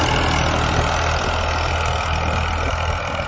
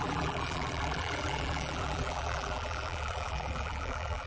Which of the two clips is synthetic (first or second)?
second